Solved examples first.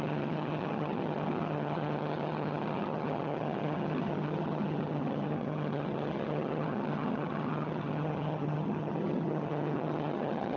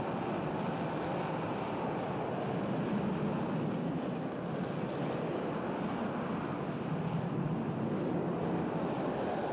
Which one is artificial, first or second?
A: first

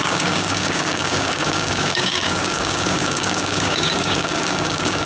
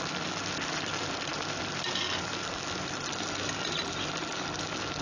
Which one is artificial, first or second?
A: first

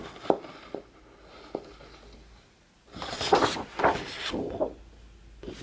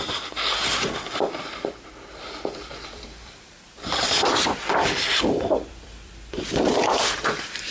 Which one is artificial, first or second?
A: second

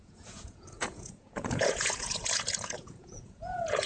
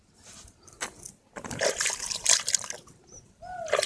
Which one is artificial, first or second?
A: first